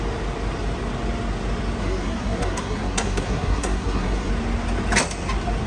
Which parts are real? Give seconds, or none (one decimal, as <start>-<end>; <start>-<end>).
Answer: 0.0-1.8; 4.3-5.7